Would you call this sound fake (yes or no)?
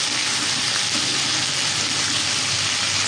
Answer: no